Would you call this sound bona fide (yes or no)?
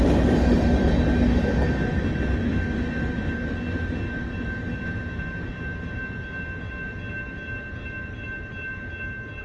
yes